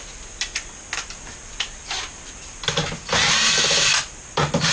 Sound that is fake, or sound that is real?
real